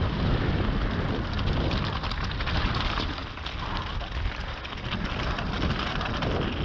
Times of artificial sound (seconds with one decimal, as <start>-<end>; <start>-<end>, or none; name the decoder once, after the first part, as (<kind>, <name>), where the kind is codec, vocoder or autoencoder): none